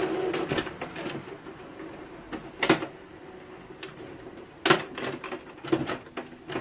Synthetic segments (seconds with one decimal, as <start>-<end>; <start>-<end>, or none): 0.0-2.0; 3.2-4.2